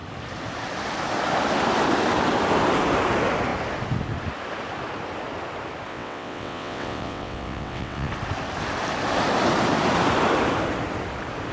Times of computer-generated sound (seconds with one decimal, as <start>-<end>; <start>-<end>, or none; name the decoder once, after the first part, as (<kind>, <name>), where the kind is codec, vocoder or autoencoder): 5.9-8.1 (vocoder, WaveNeXt)